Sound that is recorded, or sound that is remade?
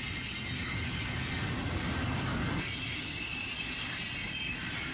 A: recorded